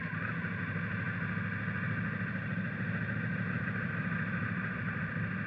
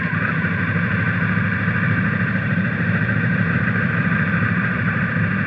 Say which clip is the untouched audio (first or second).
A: first